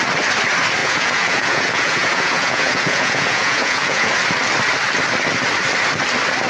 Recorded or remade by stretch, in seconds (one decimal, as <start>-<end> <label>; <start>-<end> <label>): 0.0-0.8 recorded; 0.8-4.1 remade; 4.1-6.5 recorded